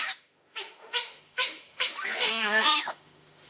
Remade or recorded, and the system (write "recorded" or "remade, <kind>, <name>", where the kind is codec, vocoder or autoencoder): remade, autoencoder, DAC-VAE